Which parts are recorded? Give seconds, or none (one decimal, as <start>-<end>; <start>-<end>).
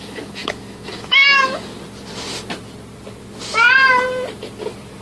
1.7-5.0